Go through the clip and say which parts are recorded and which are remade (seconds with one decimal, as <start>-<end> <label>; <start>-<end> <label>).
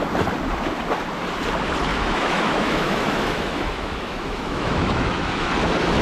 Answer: 0.0-1.9 recorded; 1.9-5.5 remade; 5.5-6.0 recorded